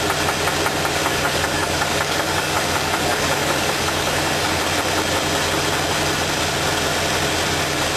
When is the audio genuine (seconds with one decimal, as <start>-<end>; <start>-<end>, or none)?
0.0-1.0; 4.6-8.0